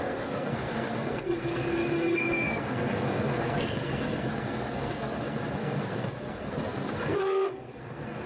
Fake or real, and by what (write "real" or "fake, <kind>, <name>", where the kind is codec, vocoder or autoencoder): fake, codec, SNAC